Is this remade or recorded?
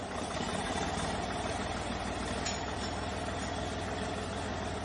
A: recorded